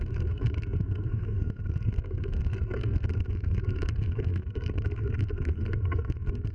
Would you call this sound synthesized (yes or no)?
yes